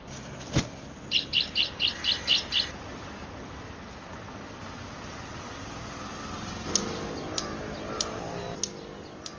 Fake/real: real